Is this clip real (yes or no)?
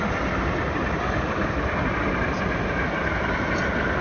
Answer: yes